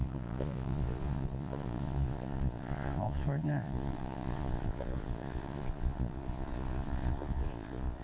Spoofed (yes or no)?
yes